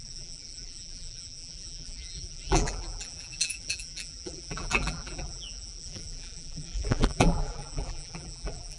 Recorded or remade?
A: remade